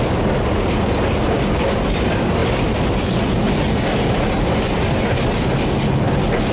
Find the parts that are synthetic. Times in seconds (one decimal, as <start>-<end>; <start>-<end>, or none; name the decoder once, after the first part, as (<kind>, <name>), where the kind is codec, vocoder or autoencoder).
none